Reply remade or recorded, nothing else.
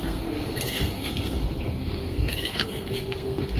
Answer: remade